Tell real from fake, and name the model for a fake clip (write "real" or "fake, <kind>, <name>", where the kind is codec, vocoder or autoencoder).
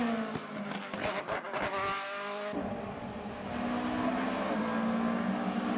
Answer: real